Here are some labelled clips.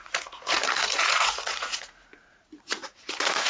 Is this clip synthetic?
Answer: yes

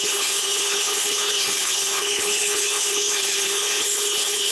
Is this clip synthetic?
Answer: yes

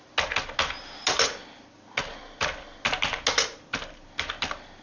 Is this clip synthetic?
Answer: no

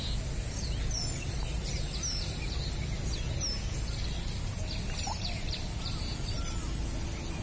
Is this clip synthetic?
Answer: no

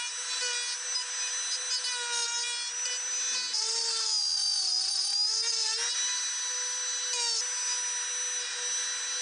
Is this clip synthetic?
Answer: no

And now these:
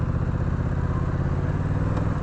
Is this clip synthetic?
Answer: no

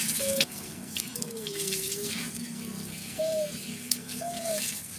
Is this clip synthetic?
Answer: yes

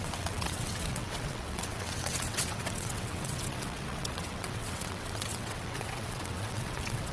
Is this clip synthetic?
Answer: yes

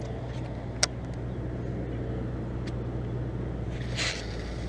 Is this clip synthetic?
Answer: no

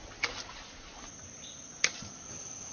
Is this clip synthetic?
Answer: no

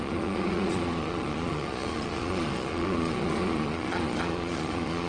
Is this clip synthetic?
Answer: yes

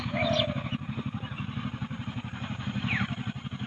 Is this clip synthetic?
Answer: yes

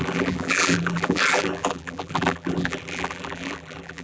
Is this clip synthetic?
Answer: yes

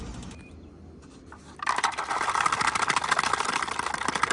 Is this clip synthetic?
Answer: no